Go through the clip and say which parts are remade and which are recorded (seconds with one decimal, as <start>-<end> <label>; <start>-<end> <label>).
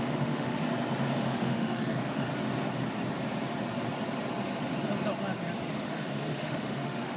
0.0-0.6 remade; 0.6-1.2 recorded; 1.2-2.3 remade; 2.3-5.7 recorded; 5.7-7.2 remade